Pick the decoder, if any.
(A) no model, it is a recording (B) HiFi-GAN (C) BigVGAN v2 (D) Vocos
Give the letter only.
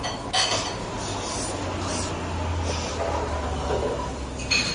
A